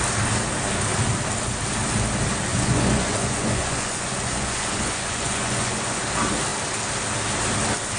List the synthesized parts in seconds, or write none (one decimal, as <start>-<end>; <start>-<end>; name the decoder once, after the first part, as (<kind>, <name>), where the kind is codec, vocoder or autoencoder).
2.5-6.0 (vocoder, Vocos)